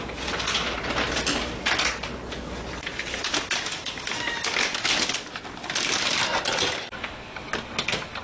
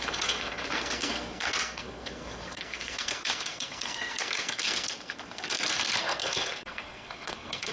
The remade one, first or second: second